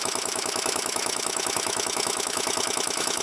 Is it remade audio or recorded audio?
remade